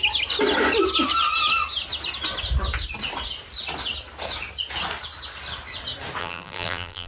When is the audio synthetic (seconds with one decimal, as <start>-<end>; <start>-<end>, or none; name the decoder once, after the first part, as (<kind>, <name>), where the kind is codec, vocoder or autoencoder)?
6.2-7.1 (vocoder, BigVGAN v2)

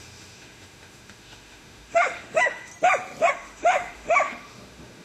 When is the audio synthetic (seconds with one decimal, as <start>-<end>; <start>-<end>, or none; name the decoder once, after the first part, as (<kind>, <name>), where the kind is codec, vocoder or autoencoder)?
0.0-2.7 (autoencoder, DAC-VAE); 3.3-5.0

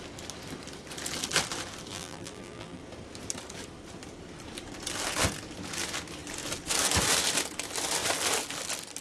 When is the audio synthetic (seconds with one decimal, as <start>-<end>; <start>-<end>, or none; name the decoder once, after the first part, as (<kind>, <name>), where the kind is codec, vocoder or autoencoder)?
1.9-2.8 (vocoder, BigVGAN v2)

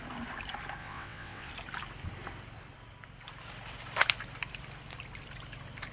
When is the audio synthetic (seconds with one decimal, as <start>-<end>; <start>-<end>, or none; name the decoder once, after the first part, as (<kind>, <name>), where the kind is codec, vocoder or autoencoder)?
0.8-1.5 (vocoder, WaveNeXt)

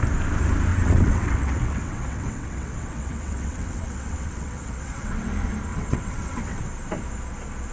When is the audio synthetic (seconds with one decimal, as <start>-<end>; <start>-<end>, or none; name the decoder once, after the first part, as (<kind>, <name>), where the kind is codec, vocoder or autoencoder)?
0.7-5.3 (vocoder, WaveNeXt); 5.7-6.6